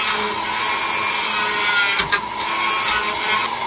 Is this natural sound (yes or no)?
yes